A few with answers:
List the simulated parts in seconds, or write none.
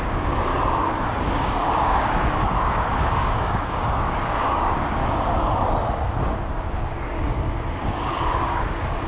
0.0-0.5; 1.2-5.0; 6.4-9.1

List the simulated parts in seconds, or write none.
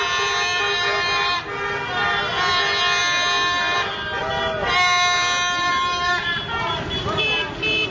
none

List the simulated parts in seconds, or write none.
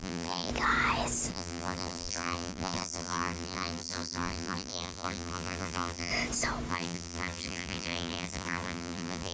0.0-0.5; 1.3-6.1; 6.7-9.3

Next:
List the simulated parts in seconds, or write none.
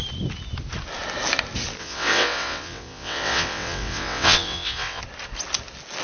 1.8-5.0